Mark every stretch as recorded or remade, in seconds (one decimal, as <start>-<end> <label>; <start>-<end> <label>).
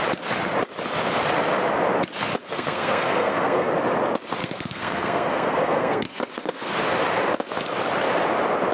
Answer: 0.0-2.4 recorded; 2.4-3.7 remade; 3.7-4.4 recorded; 4.4-6.7 remade; 6.7-8.7 recorded